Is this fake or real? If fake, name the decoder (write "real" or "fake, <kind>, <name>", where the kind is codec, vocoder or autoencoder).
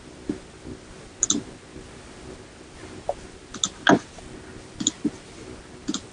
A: real